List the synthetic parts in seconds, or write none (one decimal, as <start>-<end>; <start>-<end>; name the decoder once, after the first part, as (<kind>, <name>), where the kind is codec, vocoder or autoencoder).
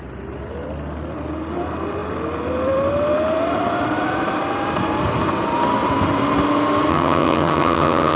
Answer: 6.9-8.2 (vocoder, HiFi-GAN)